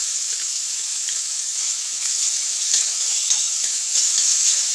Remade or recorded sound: remade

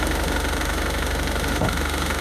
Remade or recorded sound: remade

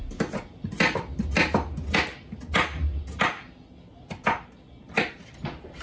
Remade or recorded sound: recorded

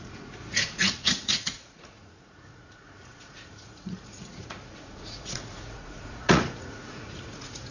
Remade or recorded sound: remade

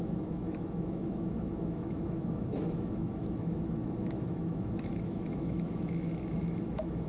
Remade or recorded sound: remade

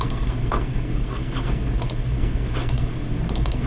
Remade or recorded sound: remade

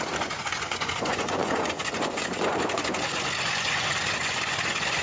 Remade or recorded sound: remade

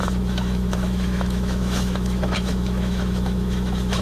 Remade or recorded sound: remade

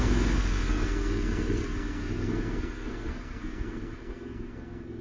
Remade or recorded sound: remade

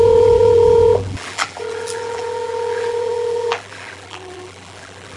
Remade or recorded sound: remade